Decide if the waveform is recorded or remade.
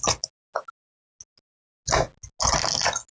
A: recorded